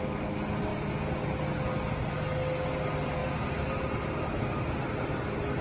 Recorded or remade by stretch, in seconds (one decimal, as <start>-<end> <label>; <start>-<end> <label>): 0.0-3.2 recorded; 3.2-5.0 remade; 5.0-5.6 recorded